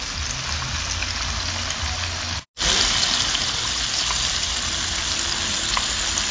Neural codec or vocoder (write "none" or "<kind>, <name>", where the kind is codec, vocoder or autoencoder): none